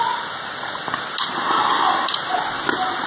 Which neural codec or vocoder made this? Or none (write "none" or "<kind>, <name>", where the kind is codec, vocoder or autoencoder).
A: none